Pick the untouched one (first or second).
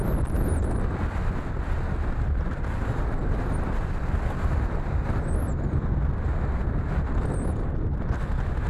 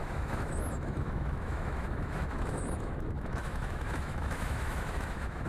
first